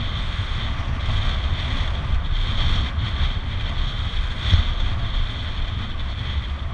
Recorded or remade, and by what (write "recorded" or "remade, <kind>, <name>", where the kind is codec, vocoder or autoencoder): recorded